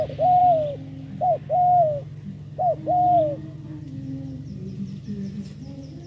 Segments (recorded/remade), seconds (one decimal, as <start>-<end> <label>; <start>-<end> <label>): 0.0-6.1 recorded